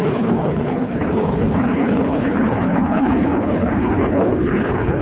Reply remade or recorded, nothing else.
remade